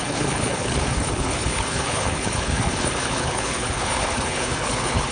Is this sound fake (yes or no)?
yes